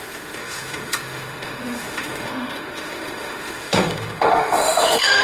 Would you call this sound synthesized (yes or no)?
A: yes